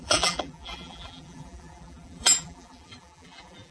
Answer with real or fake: fake